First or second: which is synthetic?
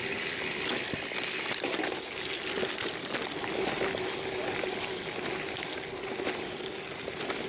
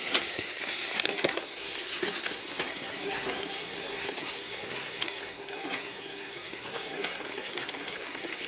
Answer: second